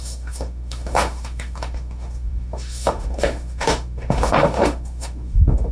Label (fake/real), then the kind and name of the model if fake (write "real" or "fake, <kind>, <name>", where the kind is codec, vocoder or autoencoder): fake, autoencoder, DAC-VAE